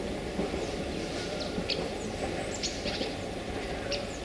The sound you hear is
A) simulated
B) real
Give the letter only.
B